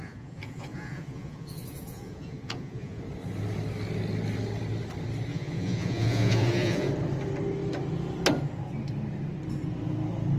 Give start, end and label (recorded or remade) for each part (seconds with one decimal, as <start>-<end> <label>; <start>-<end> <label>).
0.0-3.0 remade; 3.0-5.3 recorded; 5.3-6.9 remade; 6.9-10.4 recorded